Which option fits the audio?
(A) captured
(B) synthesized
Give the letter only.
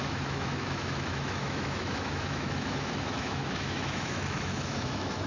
B